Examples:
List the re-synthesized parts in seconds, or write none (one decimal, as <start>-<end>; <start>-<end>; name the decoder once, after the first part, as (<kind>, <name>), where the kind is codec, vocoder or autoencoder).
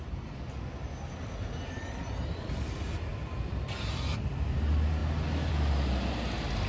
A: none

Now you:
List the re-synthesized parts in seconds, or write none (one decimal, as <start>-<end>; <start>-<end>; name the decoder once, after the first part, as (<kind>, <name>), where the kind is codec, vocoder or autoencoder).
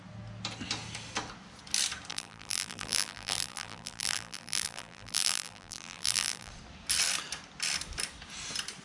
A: 2.1-6.5 (vocoder, BigVGAN v2)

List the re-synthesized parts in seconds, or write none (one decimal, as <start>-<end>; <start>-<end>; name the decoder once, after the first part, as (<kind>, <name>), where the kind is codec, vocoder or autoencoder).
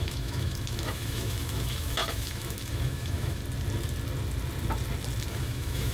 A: 0.0-3.4 (autoencoder, DAC-VAE); 5.3-5.9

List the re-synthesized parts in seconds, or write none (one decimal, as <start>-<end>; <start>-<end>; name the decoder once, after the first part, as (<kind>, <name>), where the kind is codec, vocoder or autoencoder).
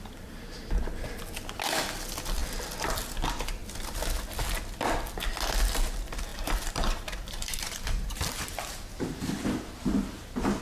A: 6.3-9.3 (vocoder, BigVGAN v2)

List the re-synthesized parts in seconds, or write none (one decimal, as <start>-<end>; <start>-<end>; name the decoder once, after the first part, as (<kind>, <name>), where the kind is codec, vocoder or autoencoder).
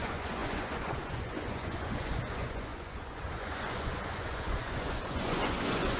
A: 0.0-6.0 (vocoder, Vocos)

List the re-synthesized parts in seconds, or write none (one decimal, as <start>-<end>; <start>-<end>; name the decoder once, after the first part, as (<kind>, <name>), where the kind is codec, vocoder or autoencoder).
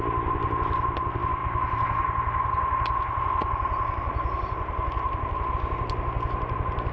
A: none